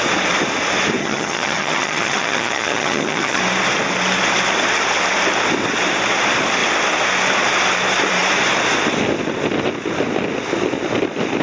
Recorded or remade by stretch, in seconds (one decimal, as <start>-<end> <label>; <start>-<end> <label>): 0.0-1.0 recorded; 1.0-3.4 remade; 3.4-11.4 recorded